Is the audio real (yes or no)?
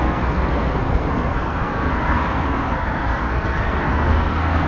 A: no